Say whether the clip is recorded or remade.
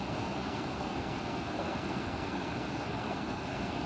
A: remade